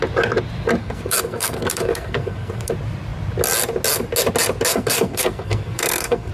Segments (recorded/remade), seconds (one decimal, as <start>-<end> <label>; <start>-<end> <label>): 0.0-0.8 recorded; 0.8-2.7 remade; 2.7-4.7 recorded; 4.7-6.3 remade